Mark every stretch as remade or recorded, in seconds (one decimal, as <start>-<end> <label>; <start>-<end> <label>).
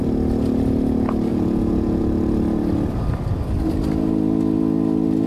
0.0-1.3 recorded; 1.3-2.0 remade; 2.0-5.3 recorded